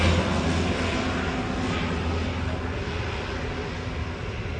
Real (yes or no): yes